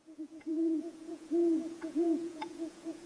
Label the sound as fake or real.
fake